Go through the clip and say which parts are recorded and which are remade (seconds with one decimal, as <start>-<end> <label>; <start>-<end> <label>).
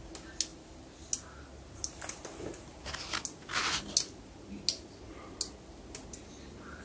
0.0-6.8 recorded